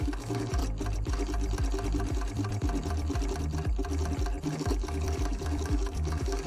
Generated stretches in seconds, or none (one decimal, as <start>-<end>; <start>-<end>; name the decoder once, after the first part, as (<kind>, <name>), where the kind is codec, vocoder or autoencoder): 0.0-0.6 (codec, DAC); 4.5-6.5